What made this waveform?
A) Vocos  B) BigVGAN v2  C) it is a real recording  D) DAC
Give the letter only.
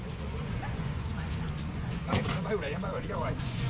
A